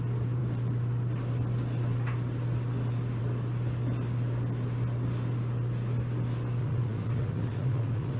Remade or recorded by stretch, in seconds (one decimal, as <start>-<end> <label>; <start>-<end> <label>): 0.0-6.6 recorded; 6.6-8.2 remade

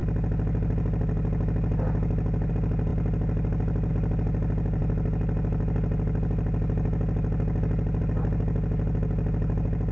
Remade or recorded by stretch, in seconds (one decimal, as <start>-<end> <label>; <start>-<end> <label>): 0.0-9.9 recorded

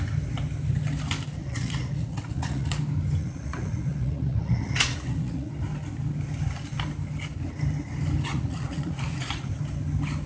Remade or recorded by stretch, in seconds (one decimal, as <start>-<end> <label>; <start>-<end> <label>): 0.0-1.4 recorded; 1.4-2.8 remade; 2.8-3.2 recorded; 3.2-5.5 remade; 5.5-8.3 recorded; 8.3-9.5 remade; 9.5-10.3 recorded

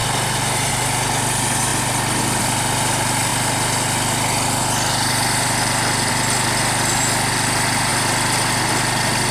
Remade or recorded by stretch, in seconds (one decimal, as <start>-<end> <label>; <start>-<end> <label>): 0.0-9.3 recorded

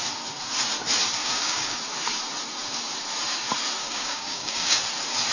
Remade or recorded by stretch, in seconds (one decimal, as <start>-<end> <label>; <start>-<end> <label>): 0.0-1.2 recorded; 1.2-1.8 remade; 1.8-3.8 recorded; 3.8-4.8 remade; 4.8-5.3 recorded

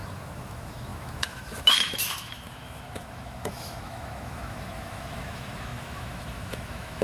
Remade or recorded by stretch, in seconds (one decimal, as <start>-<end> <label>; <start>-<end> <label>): 0.0-7.0 remade

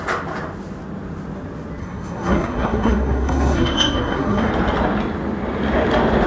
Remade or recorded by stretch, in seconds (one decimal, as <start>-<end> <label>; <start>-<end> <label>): 0.0-1.8 recorded; 1.8-4.5 remade; 4.5-6.3 recorded